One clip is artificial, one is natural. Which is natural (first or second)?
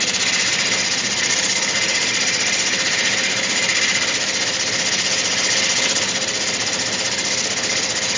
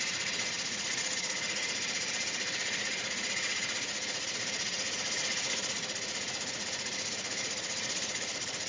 first